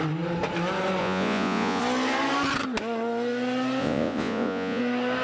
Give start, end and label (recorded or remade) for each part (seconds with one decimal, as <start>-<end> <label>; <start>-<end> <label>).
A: 0.0-1.0 recorded; 1.0-1.8 remade; 1.8-3.8 recorded; 3.8-4.8 remade; 4.8-5.2 recorded

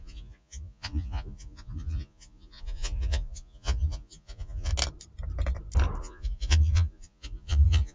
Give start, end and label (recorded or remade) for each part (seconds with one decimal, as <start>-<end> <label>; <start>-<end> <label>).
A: 0.0-4.7 remade; 4.7-6.0 recorded; 6.0-7.9 remade

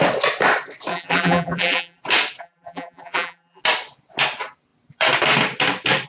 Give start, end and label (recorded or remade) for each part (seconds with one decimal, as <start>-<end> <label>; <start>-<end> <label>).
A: 0.0-0.9 recorded; 0.9-2.0 remade; 2.0-2.4 recorded; 2.4-3.6 remade; 3.6-6.1 recorded

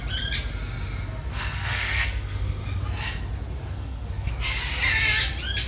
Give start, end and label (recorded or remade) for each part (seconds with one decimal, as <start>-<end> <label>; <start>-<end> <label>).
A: 0.0-1.3 recorded; 1.3-2.6 remade; 2.6-3.7 recorded; 3.7-4.3 remade; 4.3-5.7 recorded